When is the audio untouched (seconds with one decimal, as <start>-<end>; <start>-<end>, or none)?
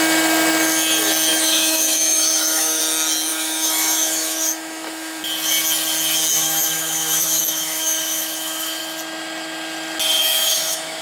0.0-1.3; 2.8-3.3; 5.2-6.3; 8.8-10.2